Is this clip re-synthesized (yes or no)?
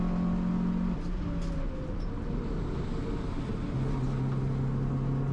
no